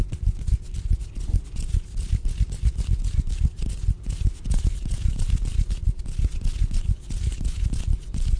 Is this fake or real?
real